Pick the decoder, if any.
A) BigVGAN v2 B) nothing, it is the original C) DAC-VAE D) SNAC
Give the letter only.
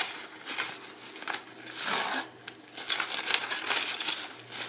B